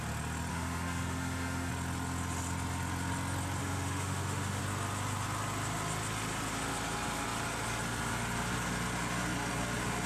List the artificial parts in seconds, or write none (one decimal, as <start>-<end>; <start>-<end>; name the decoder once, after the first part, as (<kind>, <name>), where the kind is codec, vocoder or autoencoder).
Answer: 0.5-1.7 (autoencoder, DAC-VAE); 3.6-4.6